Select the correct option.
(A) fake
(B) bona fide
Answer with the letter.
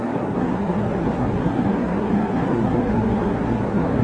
A